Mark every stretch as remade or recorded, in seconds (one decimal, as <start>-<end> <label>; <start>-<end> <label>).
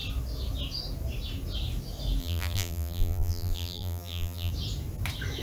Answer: 0.0-2.2 recorded; 2.2-4.5 remade; 4.5-5.4 recorded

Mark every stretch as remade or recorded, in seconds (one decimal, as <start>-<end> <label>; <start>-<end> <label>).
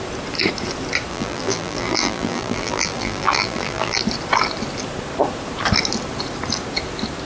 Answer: 0.0-1.1 recorded; 1.1-4.0 remade; 4.0-7.2 recorded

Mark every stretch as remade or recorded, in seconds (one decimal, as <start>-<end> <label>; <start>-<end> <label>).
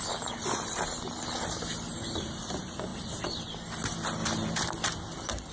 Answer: 0.0-2.9 recorded; 2.9-3.4 remade; 3.4-4.2 recorded; 4.2-4.7 remade; 4.7-5.5 recorded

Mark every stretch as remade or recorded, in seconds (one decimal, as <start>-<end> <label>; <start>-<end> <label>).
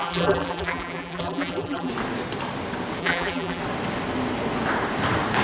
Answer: 0.0-1.9 remade; 1.9-3.0 recorded; 3.0-3.6 remade; 3.6-5.4 recorded